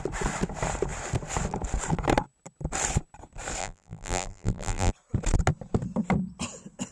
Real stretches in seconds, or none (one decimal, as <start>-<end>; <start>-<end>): 0.0-3.6; 4.9-6.9